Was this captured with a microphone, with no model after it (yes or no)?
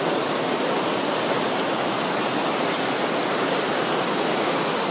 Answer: yes